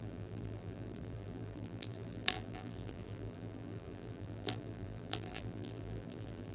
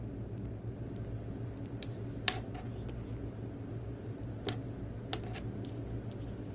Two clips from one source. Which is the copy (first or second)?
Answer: first